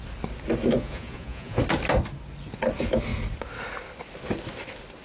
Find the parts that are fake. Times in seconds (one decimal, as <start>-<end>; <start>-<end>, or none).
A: 0.7-1.6